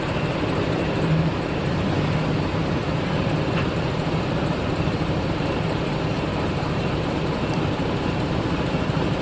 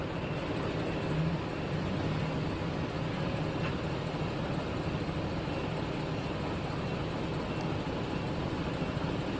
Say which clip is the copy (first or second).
first